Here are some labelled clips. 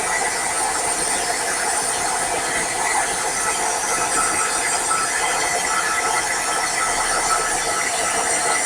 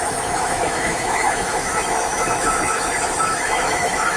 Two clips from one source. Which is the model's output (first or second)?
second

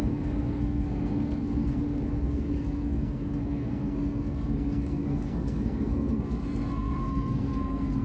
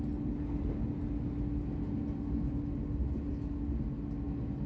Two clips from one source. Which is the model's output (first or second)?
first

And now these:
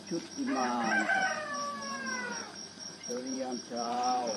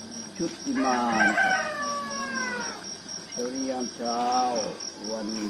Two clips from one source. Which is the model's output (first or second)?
first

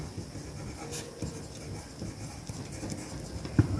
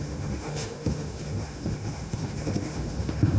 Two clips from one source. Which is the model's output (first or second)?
second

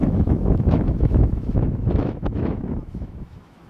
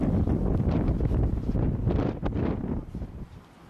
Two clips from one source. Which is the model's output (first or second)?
first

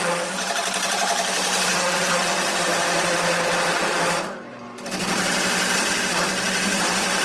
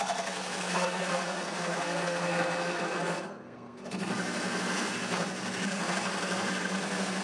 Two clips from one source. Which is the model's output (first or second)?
second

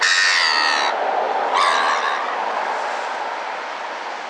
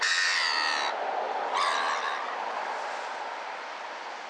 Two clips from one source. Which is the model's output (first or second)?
second